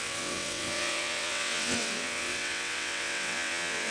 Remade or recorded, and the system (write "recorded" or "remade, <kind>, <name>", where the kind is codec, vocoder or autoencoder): remade, vocoder, WaveNeXt